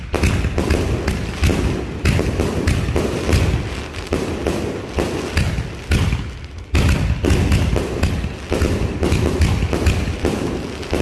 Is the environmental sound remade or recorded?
recorded